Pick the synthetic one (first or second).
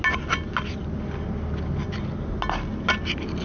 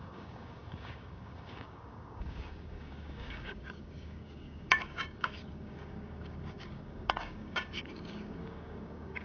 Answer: second